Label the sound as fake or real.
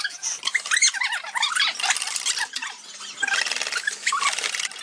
real